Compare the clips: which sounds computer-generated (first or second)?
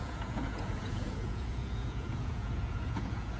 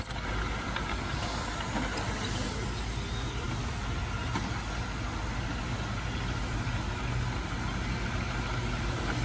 first